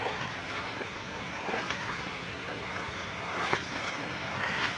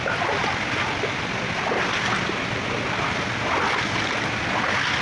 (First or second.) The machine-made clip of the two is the first